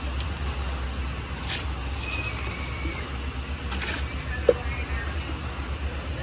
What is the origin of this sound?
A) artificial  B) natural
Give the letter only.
B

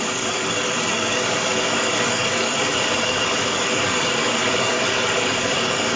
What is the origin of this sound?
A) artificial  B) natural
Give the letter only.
A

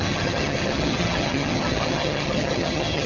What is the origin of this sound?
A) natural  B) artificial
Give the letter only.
B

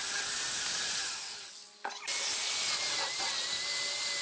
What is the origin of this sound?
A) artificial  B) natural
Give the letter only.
B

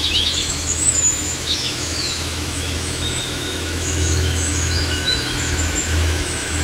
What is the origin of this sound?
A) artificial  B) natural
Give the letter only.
A